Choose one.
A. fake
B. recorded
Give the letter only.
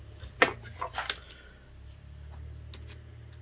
B